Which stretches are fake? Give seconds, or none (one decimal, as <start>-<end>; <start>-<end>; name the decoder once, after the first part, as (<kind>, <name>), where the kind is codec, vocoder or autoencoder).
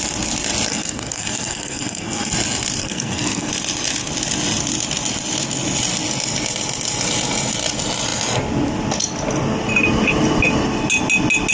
0.7-2.3 (codec, SNAC); 2.8-3.5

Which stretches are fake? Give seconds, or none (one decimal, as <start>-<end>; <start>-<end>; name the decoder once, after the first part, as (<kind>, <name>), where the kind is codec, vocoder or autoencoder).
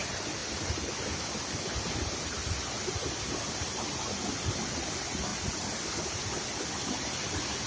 none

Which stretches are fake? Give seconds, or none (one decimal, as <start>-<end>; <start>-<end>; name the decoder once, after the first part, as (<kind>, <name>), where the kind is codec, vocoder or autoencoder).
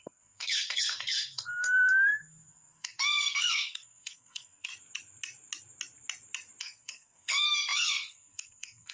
0.0-4.7 (codec, SNAC); 6.6-8.9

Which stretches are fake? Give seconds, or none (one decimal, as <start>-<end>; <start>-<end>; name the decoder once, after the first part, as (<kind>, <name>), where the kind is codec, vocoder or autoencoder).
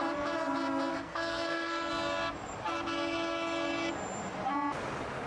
0.9-1.9 (codec, SNAC)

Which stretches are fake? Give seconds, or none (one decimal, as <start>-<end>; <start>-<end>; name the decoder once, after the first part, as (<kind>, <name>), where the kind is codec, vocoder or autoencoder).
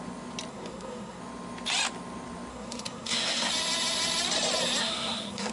0.5-1.2 (codec, SNAC); 2.5-3.5; 4.8-5.5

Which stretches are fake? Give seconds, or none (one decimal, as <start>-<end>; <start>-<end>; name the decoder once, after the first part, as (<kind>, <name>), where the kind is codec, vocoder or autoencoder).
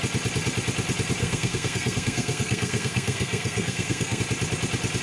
1.2-4.2 (codec, SNAC)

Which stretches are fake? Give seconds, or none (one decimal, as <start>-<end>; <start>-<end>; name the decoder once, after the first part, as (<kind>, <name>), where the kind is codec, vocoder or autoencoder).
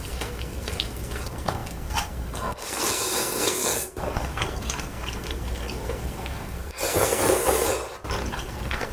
0.0-7.7 (codec, SNAC); 8.3-8.9